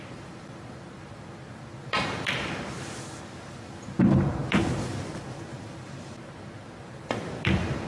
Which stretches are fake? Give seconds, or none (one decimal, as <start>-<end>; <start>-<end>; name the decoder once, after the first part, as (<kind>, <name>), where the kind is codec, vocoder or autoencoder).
0.0-7.9 (vocoder, BigVGAN v2)